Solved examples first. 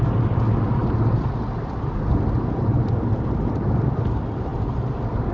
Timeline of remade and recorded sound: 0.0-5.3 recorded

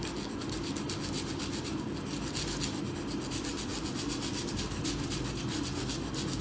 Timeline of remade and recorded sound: 0.0-6.4 recorded

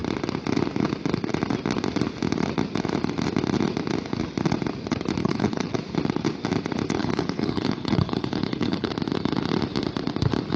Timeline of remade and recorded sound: 0.0-5.2 recorded; 5.2-5.8 remade; 5.8-7.0 recorded; 7.0-8.9 remade; 8.9-10.6 recorded

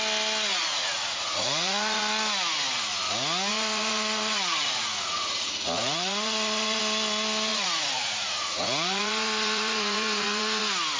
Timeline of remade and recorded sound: 0.0-0.5 recorded; 0.5-2.0 remade; 2.0-3.5 recorded; 3.5-6.8 remade; 6.8-7.5 recorded; 7.5-10.6 remade; 10.6-11.0 recorded